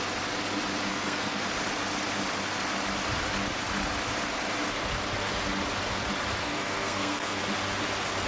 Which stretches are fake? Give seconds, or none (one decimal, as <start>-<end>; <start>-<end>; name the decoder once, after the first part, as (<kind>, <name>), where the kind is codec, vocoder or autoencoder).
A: 0.9-1.4 (codec, SNAC); 6.4-7.4